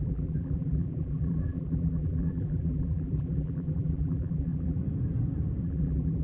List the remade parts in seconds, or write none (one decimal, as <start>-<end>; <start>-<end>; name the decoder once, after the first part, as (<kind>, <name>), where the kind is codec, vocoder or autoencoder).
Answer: 0.0-4.8 (vocoder, BigVGAN v2); 5.6-6.2

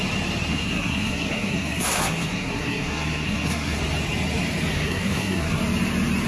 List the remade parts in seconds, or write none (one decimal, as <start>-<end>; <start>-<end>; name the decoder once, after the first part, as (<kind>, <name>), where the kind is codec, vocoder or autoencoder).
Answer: 0.5-3.8 (codec, SNAC); 4.7-5.6

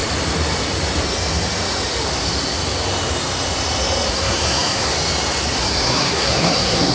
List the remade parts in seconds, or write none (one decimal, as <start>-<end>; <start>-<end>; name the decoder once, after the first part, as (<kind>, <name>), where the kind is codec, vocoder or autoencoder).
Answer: 4.1-4.9 (codec, SNAC); 5.6-6.9

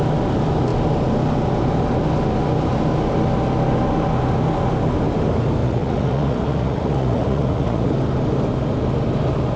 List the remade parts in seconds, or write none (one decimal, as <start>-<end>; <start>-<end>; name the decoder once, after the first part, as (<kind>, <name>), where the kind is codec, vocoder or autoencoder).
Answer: 5.6-7.9 (vocoder, Vocos)

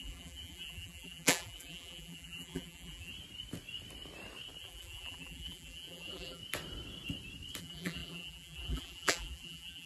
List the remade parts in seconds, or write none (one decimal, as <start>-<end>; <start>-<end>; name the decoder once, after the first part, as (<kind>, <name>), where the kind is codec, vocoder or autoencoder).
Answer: 0.0-3.1 (vocoder, BigVGAN v2); 4.6-6.4; 7.6-9.9

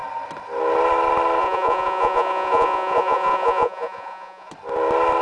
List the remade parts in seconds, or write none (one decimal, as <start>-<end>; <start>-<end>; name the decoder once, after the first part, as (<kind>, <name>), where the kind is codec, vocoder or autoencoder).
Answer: 1.4-4.5 (vocoder, Vocos)

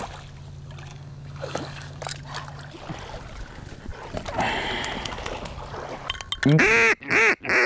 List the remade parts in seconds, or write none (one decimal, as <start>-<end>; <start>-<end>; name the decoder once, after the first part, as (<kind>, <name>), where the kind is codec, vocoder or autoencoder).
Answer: 0.9-2.0 (codec, DAC)

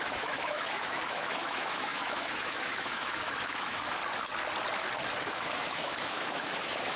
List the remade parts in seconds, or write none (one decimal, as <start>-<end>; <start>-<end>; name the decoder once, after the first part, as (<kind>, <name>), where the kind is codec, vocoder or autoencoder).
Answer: 0.0-4.0 (autoencoder, DAC-VAE); 5.2-7.0